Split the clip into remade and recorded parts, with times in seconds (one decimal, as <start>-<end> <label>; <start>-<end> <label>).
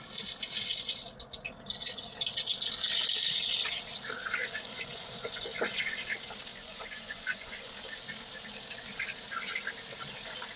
0.0-4.4 recorded; 4.4-5.8 remade; 5.8-6.5 recorded; 6.5-7.7 remade; 7.7-10.6 recorded